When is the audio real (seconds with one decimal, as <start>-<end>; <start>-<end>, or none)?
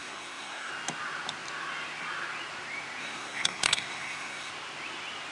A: 0.7-3.0; 4.5-5.3